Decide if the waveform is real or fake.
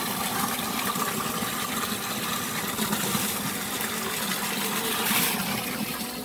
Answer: real